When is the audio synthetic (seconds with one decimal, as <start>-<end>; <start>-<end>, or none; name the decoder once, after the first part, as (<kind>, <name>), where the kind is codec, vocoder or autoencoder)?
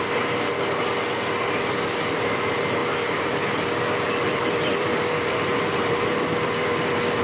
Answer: 2.8-7.2 (vocoder, BigVGAN v2)